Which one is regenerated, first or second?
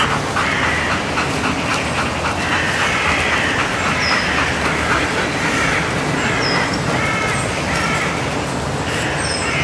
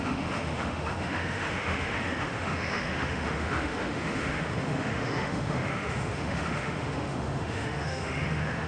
second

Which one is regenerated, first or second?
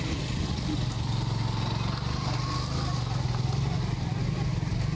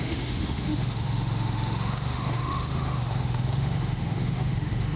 second